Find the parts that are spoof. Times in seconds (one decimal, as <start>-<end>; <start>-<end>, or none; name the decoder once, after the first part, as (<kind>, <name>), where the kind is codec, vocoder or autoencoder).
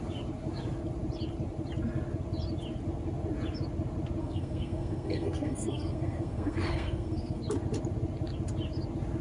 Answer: 4.2-7.4 (codec, SNAC)